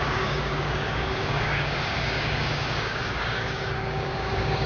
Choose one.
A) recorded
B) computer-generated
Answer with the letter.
B